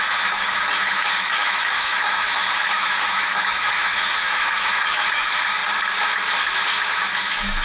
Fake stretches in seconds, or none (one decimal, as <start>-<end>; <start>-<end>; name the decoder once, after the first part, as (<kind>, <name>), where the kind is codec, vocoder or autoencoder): 0.0-5.6 (autoencoder, DAC-VAE); 6.4-7.6